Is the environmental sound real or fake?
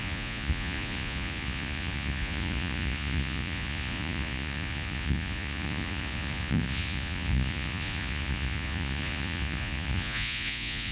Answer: fake